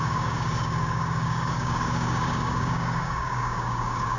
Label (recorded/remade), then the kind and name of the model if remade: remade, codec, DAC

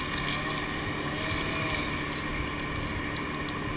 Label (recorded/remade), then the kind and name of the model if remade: recorded